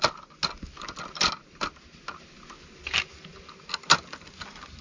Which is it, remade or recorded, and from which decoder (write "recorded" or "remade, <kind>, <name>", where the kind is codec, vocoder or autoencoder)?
recorded